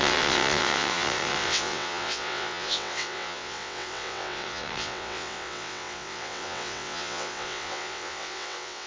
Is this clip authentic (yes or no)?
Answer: no